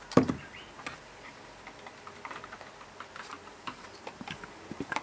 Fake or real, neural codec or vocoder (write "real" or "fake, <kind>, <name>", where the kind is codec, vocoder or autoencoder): fake, vocoder, BigVGAN v2